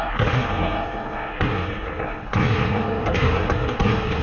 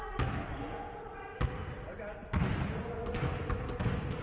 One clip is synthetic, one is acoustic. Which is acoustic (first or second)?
second